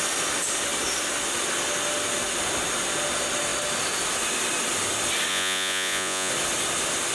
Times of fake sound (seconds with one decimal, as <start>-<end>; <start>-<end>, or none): 5.3-6.3